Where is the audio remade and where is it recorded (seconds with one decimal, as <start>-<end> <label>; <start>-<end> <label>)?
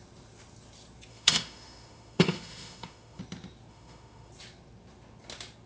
0.0-1.1 recorded; 1.1-3.2 remade; 3.2-3.7 recorded; 3.7-4.3 remade; 4.3-5.7 recorded